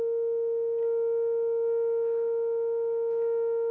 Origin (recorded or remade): recorded